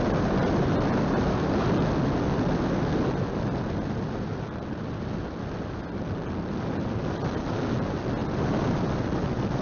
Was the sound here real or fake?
real